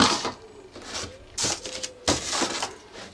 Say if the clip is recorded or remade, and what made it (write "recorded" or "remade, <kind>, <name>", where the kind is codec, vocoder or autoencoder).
recorded